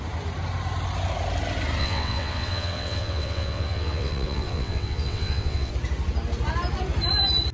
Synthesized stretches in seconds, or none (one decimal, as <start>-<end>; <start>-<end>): 1.8-5.7